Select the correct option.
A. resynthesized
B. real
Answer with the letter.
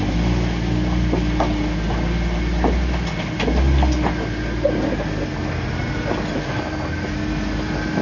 B